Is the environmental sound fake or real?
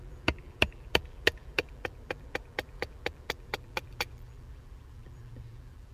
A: fake